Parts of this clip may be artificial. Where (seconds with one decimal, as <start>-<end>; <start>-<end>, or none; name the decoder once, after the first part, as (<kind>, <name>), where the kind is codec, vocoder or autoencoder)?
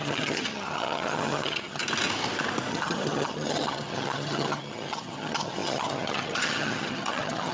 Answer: 0.0-1.8 (vocoder, HiFi-GAN); 2.7-7.5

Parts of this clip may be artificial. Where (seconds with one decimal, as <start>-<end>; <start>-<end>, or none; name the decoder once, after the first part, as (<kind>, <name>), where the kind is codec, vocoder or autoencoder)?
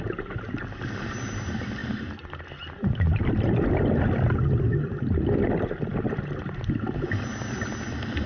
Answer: none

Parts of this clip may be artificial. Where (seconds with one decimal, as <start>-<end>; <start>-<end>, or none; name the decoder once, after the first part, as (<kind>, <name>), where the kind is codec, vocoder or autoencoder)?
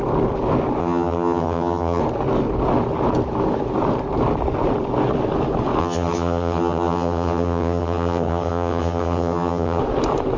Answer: 0.8-2.0 (vocoder, HiFi-GAN); 5.8-9.8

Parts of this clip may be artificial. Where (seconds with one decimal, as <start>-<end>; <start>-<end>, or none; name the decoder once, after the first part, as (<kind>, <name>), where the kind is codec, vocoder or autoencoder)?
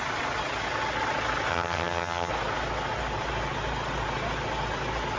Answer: 1.5-2.3 (vocoder, HiFi-GAN)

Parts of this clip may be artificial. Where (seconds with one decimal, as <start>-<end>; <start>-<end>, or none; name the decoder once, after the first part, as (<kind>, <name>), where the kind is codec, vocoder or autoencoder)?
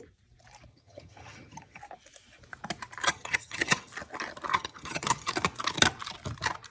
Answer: 0.7-1.8 (vocoder, HiFi-GAN); 3.0-3.9; 4.5-5.3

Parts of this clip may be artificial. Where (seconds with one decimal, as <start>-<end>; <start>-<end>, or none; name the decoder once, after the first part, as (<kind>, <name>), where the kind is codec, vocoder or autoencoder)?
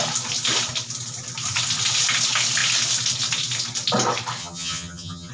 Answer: 4.4-5.3 (vocoder, HiFi-GAN)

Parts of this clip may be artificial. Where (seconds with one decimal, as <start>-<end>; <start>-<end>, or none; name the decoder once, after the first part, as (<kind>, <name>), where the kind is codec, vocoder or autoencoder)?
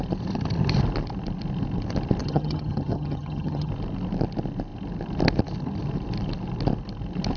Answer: 2.2-3.7 (vocoder, HiFi-GAN)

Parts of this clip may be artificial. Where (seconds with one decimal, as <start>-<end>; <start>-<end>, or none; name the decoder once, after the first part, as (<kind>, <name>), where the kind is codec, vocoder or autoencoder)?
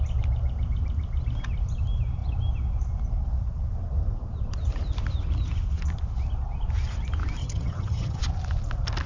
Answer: 7.4-8.2 (vocoder, HiFi-GAN)